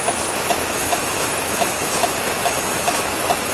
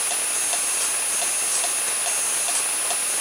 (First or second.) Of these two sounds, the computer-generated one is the first